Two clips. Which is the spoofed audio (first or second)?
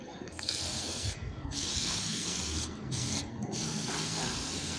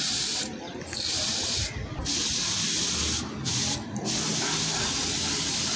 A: first